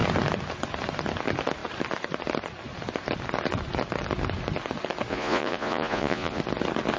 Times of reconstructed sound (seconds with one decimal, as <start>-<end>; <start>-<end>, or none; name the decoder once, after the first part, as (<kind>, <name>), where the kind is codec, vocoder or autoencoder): 5.1-6.4 (vocoder, Vocos)